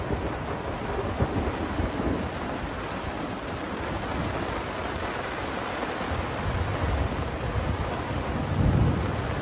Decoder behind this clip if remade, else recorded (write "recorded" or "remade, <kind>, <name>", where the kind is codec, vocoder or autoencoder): recorded